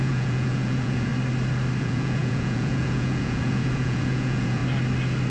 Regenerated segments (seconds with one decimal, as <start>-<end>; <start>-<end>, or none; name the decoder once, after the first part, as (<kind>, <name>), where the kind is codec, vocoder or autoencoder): 0.0-1.1 (vocoder, Vocos); 1.8-4.6